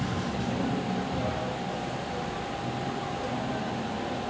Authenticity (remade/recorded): recorded